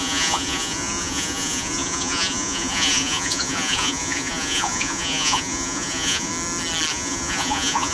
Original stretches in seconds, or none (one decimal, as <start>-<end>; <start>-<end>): 6.3-6.9